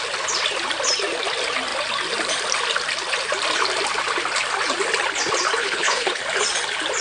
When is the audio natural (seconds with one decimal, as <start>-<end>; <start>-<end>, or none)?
0.0-5.6; 6.2-7.0